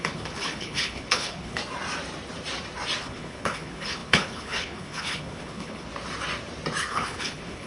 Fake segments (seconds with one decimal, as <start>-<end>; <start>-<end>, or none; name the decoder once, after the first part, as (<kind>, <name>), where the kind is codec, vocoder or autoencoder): 0.0-1.6 (codec, HILCodec); 3.0-5.9; 6.8-7.7